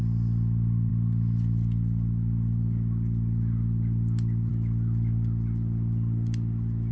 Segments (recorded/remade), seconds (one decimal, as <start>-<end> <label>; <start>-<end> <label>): 0.0-6.9 recorded